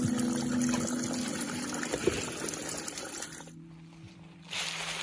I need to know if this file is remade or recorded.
recorded